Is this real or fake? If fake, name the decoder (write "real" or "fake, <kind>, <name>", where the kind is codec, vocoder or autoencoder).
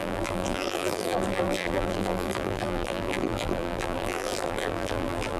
fake, vocoder, BigVGAN v2